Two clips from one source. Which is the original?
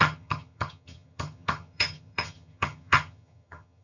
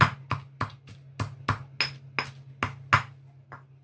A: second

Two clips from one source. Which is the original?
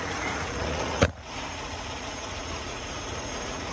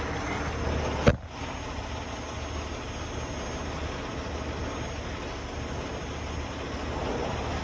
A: second